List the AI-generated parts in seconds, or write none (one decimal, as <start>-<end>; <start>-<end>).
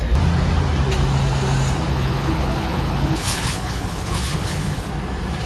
1.9-4.9